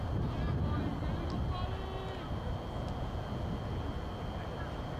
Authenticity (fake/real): real